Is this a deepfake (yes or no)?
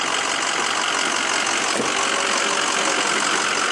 no